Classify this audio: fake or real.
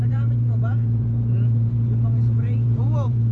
fake